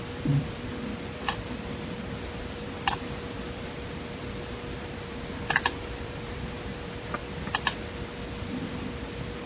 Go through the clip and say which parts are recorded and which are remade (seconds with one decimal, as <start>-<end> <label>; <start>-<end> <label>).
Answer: 0.0-9.5 remade